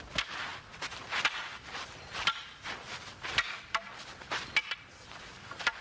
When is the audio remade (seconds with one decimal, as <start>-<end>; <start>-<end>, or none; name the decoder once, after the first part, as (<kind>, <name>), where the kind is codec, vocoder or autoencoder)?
none